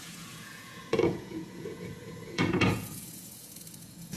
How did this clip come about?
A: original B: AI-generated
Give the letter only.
B